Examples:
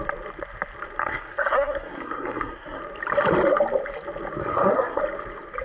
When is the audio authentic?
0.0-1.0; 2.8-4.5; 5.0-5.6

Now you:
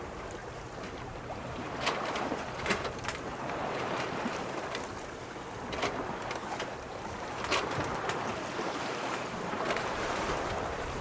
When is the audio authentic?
0.0-0.4; 4.6-6.4; 7.8-8.3

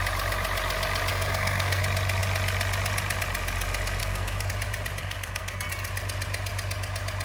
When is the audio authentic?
0.0-1.1; 1.8-4.0; 4.5-5.0; 5.7-7.2

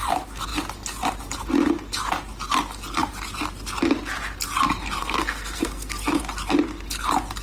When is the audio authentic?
0.0-5.0; 6.2-7.4

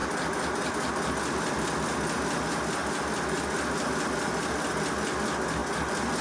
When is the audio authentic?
0.0-6.2

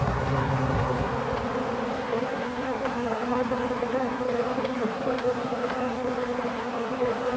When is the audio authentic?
1.1-1.9

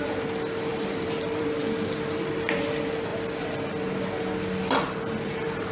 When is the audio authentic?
0.0-0.7; 1.6-5.7